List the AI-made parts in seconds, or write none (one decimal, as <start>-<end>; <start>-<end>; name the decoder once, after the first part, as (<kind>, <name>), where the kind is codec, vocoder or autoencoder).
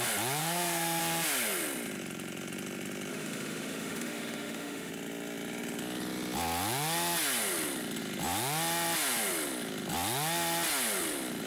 0.4-1.0 (autoencoder, DAC-VAE); 3.1-4.9